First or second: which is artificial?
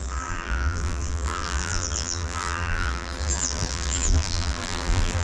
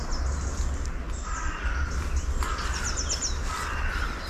first